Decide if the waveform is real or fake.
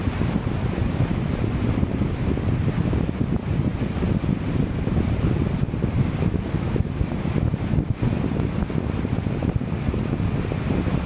real